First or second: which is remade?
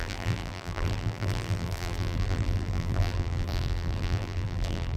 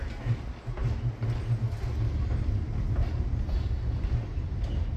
first